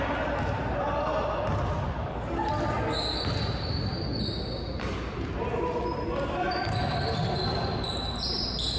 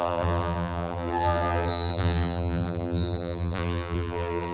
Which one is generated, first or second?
second